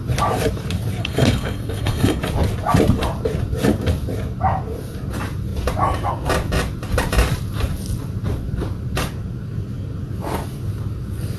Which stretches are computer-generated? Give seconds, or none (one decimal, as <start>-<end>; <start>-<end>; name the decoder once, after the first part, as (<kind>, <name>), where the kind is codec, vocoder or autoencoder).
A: 1.0-2.2 (codec, SNAC)

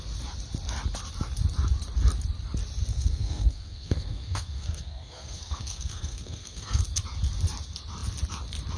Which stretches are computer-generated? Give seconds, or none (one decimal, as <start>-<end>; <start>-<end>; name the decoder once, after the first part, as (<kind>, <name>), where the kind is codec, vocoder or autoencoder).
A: 2.9-6.8 (codec, SNAC)

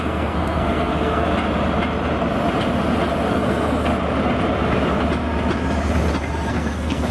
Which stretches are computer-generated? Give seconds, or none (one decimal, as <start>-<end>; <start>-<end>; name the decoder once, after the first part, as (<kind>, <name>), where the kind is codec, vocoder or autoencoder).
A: 0.0-1.3 (codec, SNAC); 3.3-3.9; 6.5-7.1

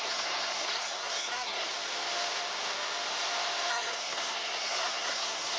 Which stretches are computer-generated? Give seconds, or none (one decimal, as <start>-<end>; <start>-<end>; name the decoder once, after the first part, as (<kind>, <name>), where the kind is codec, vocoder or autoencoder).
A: 0.0-1.7 (codec, SNAC); 3.7-5.6

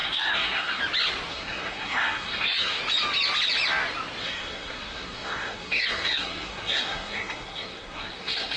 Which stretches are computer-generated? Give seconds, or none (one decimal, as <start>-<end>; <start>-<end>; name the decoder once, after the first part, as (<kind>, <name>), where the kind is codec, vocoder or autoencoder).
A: 0.0-0.8 (codec, SNAC); 1.3-2.8; 4.2-8.6